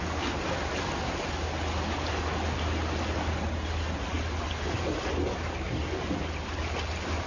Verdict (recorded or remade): recorded